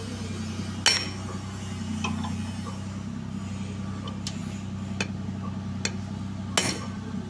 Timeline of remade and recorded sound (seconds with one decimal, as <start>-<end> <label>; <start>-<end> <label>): 0.0-6.6 recorded; 6.6-7.3 remade